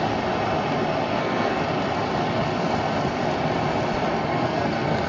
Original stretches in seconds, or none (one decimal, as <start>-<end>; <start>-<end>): 0.0-1.1; 1.6-4.3